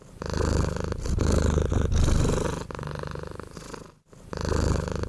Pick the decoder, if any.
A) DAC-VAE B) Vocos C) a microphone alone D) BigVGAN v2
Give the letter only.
C